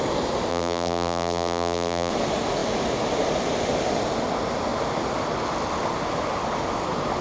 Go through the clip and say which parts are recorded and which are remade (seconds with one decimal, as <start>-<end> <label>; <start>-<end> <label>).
0.0-0.5 recorded; 0.5-2.1 remade; 2.1-7.2 recorded